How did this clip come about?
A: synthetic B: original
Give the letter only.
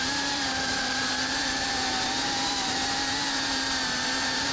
A